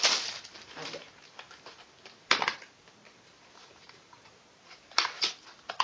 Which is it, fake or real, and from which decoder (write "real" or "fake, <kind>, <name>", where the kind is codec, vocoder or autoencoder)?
fake, vocoder, BigVGAN v2